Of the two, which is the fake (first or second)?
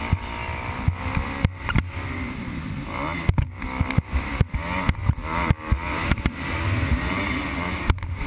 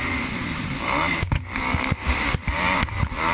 second